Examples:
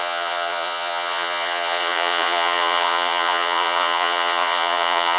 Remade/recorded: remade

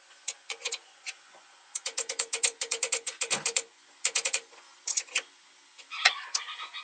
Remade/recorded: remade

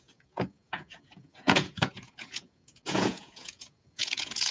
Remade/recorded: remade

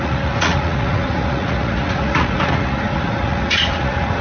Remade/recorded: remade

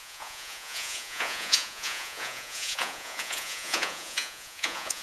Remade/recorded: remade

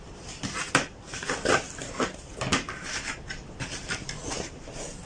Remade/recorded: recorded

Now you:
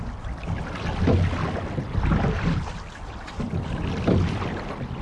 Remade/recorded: recorded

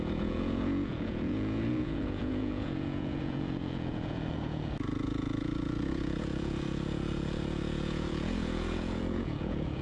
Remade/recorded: remade